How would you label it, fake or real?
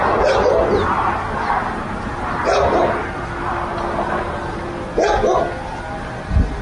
real